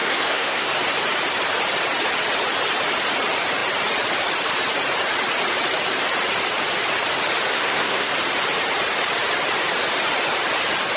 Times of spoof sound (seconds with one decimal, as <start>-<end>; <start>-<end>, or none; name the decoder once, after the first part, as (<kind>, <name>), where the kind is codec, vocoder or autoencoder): 0.0-0.7 (codec, SNAC); 7.5-8.1